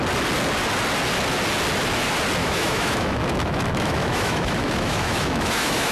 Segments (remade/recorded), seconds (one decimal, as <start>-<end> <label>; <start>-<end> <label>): 0.0-2.4 recorded; 2.4-5.9 remade